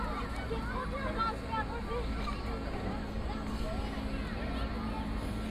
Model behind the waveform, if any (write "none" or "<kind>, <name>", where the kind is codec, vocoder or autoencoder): none